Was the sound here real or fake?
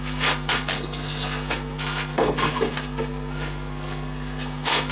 fake